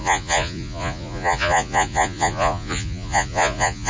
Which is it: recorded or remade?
remade